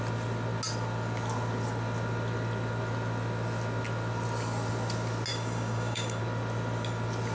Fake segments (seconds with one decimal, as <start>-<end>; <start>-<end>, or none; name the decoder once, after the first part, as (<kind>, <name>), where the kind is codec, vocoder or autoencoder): 5.3-6.2 (codec, DAC)